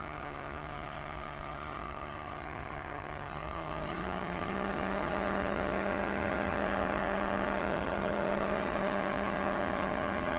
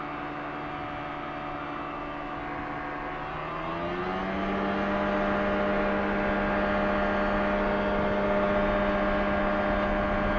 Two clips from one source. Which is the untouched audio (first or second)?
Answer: second